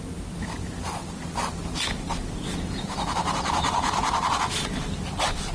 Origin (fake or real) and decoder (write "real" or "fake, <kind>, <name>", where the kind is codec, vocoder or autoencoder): real